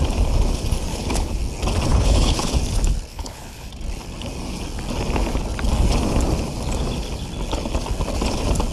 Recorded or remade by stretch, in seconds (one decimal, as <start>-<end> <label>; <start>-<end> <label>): 0.0-0.9 recorded; 0.9-1.4 remade; 1.4-1.9 recorded; 1.9-2.5 remade; 2.5-3.1 recorded; 3.1-3.7 remade; 3.7-8.7 recorded